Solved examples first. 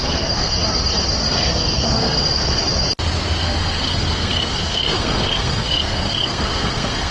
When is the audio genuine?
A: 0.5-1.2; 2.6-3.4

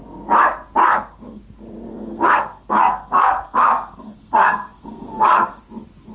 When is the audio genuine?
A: 0.0-0.8; 1.4-1.9; 5.6-6.1

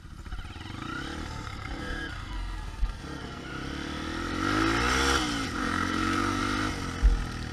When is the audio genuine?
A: 0.0-1.2; 3.5-5.6; 6.4-7.5